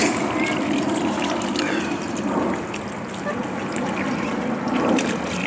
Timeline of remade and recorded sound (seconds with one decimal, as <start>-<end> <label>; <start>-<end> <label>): 0.0-5.5 recorded